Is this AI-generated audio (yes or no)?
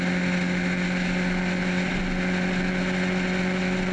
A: no